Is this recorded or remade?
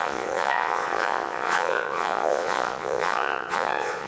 remade